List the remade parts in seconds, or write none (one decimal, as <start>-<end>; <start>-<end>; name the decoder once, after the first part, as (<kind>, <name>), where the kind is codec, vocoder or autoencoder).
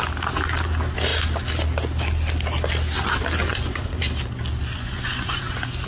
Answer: 3.5-4.0 (vocoder, Vocos); 4.7-5.4